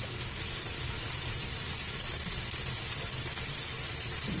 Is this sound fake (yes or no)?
no